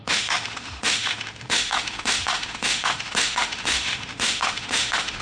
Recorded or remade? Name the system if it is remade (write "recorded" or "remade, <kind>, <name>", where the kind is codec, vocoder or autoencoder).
remade, autoencoder, DAC-VAE